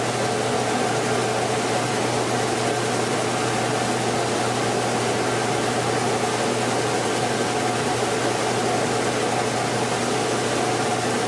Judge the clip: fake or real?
real